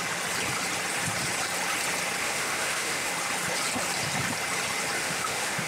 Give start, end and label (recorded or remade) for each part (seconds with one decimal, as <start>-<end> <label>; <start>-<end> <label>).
0.0-2.2 recorded; 2.2-3.1 remade; 3.1-5.0 recorded; 5.0-5.7 remade